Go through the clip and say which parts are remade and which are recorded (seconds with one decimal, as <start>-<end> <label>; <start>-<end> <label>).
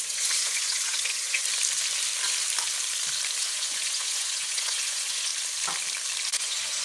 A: 0.0-1.4 remade; 1.4-3.4 recorded; 3.4-5.3 remade; 5.3-6.3 recorded; 6.3-6.8 remade